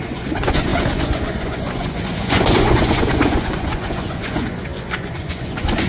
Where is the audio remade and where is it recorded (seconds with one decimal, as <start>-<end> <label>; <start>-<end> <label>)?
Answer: 0.0-5.9 remade